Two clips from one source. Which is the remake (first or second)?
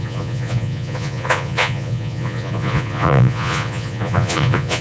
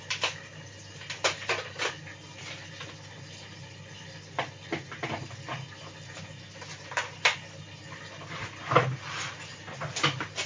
first